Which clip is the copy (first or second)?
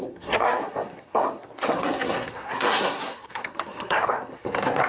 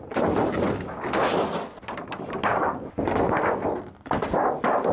first